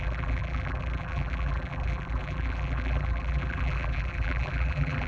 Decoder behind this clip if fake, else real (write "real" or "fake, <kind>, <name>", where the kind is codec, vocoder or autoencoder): fake, vocoder, BigVGAN v2